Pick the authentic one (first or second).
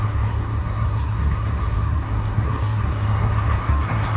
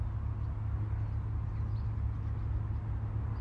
second